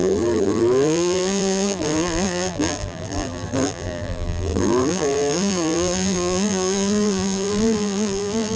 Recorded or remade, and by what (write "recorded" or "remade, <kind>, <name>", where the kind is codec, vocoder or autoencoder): remade, vocoder, BigVGAN v2